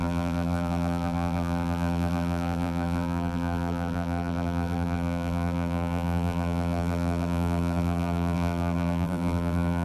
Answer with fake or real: fake